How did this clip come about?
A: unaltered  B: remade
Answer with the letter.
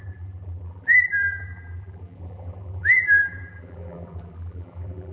B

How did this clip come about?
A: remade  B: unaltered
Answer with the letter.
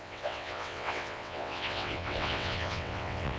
A